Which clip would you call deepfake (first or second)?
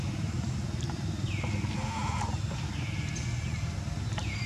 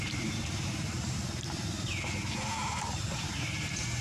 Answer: second